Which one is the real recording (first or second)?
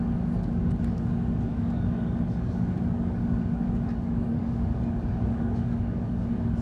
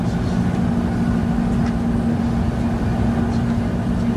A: second